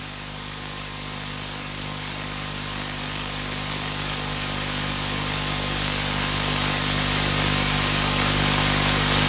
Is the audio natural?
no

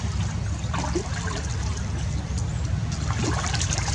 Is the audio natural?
yes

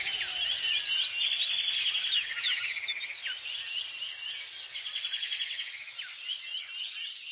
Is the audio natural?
yes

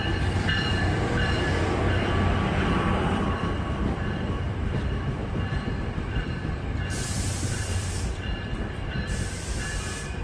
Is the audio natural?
no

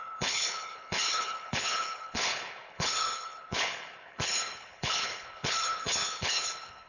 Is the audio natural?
no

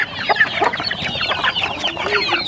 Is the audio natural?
no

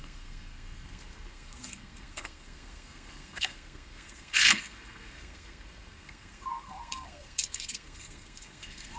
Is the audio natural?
no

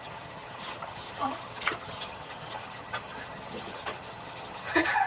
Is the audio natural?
no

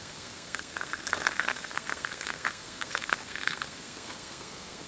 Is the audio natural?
no